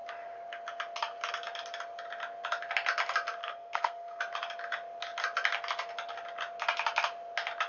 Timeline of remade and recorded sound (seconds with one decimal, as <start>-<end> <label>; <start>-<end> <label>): 0.0-3.4 recorded; 3.4-4.2 remade; 4.2-7.7 recorded